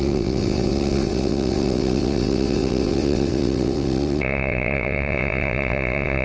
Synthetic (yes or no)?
yes